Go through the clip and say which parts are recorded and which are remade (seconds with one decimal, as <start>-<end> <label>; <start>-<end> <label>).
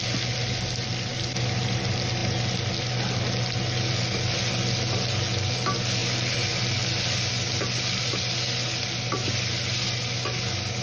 0.0-10.8 recorded